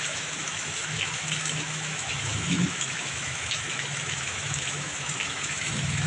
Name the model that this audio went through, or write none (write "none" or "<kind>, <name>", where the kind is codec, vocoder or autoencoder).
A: autoencoder, DAC-VAE